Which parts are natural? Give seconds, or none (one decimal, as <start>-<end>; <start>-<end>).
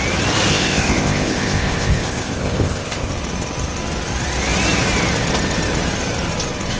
0.0-0.5; 3.1-6.8